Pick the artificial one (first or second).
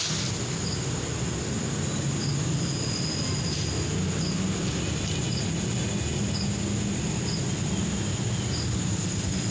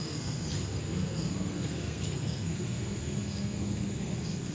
second